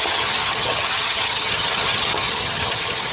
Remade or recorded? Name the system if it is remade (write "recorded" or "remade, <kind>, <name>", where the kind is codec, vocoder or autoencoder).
remade, vocoder, HiFi-GAN